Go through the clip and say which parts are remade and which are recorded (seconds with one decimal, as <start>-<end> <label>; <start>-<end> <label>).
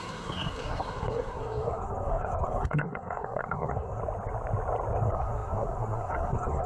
0.0-4.0 remade; 4.0-5.0 recorded; 5.0-6.7 remade